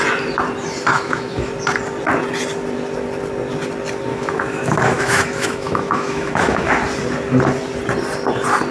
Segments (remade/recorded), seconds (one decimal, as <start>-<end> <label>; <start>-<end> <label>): 0.0-0.9 recorded; 0.9-1.5 remade; 1.5-4.1 recorded; 4.1-6.7 remade; 6.7-8.7 recorded